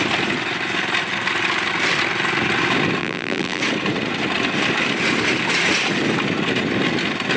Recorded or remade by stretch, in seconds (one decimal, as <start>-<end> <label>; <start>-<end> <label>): 0.0-3.0 recorded; 3.0-3.6 remade; 3.6-7.4 recorded

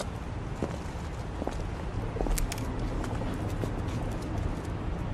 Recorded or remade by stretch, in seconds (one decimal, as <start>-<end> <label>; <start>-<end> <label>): 0.0-5.1 recorded

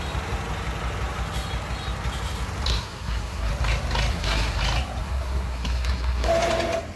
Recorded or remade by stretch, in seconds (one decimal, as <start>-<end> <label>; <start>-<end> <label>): 0.0-2.7 recorded; 2.7-3.5 remade; 3.5-4.1 recorded; 4.1-4.6 remade; 4.6-5.0 recorded; 5.0-6.3 remade; 6.3-7.0 recorded

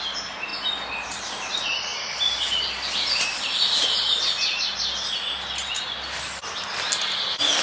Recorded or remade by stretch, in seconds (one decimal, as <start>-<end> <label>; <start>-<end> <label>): 0.0-7.6 recorded

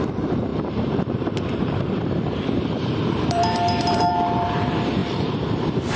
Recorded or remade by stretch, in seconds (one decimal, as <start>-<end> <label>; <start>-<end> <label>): 0.0-6.0 remade

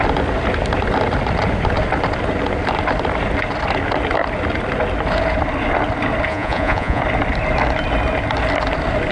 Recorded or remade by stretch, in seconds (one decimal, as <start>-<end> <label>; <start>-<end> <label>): 0.0-6.3 recorded; 6.3-7.0 remade; 7.0-9.1 recorded

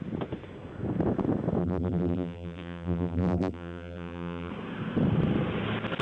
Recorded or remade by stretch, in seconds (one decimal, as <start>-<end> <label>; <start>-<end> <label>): 0.0-1.6 recorded; 1.6-4.5 remade; 4.5-6.0 recorded